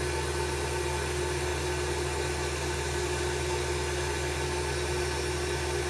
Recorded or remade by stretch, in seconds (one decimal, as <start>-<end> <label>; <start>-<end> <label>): 0.0-5.9 recorded